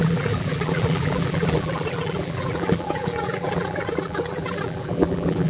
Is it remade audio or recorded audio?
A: remade